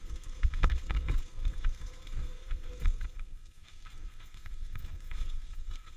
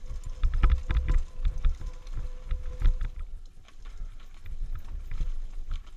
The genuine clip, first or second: second